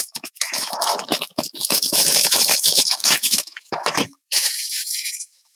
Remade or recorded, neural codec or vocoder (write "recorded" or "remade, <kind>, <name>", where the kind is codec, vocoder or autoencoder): remade, autoencoder, DAC-VAE